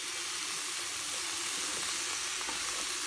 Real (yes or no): yes